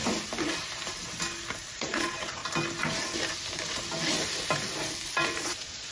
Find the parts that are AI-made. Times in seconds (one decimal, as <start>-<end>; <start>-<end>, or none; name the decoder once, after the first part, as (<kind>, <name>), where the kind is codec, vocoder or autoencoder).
1.7-2.4 (vocoder, Vocos); 5.4-5.9